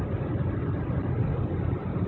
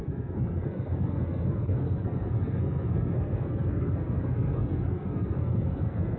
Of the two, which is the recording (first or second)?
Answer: first